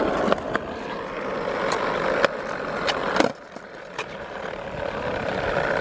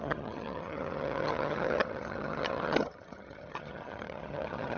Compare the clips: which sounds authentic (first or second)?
first